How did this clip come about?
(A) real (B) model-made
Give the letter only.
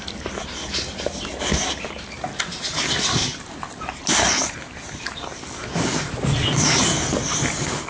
A